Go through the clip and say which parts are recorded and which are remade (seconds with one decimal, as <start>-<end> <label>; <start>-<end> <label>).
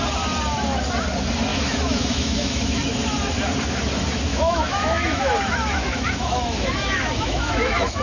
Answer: 0.0-1.5 recorded; 1.5-2.8 remade; 2.8-4.3 recorded; 4.3-8.0 remade